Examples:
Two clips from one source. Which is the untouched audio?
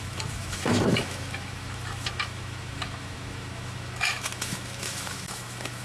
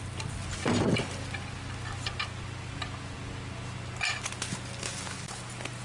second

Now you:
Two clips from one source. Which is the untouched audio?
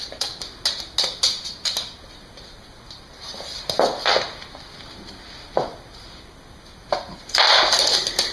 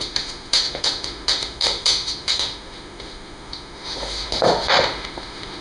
first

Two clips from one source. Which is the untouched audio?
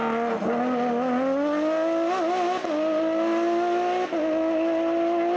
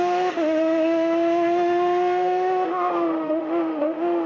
first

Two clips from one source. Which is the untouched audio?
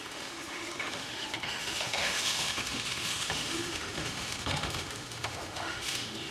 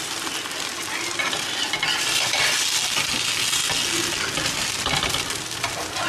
second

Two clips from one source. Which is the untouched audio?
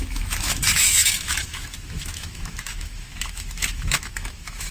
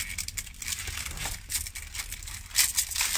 second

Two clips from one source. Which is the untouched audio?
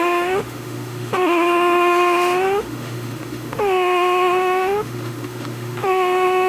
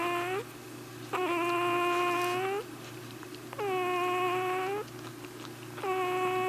second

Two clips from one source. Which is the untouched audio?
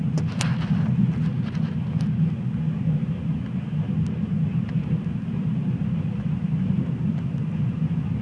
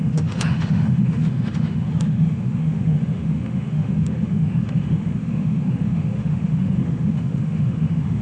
first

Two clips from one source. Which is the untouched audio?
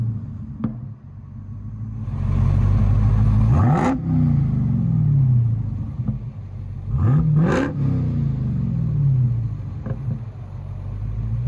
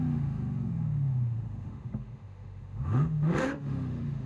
first